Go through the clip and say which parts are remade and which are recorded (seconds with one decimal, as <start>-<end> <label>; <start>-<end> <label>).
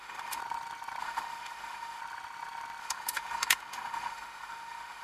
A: 0.0-0.4 remade; 0.4-1.0 recorded; 1.0-2.0 remade; 2.0-2.8 recorded; 2.8-5.0 remade